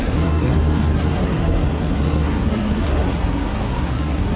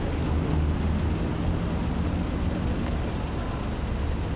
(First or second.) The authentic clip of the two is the second